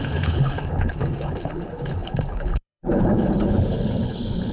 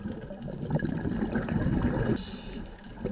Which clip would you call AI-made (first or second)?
first